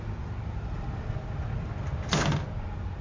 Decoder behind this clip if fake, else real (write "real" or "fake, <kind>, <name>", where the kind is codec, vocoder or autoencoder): real